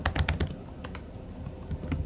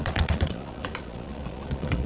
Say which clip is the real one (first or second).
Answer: first